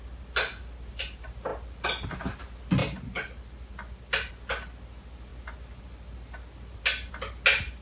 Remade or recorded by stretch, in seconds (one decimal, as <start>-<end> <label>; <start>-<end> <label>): 0.0-7.8 recorded